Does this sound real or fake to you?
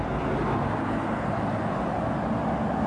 real